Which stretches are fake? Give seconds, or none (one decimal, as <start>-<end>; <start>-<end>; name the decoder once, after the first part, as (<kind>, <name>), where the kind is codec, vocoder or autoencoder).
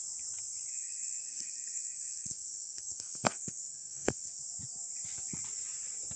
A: 0.7-4.4 (codec, SNAC)